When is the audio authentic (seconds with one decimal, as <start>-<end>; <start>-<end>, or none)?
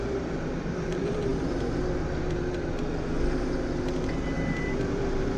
1.3-4.5